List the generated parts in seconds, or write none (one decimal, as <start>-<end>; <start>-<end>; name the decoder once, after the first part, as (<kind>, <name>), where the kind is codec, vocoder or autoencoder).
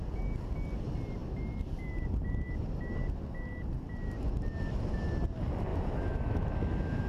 5.7-7.1 (autoencoder, DAC-VAE)